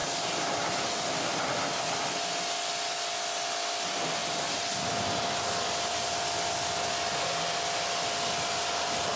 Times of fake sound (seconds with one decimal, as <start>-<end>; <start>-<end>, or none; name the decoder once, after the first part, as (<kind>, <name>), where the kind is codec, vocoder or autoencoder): none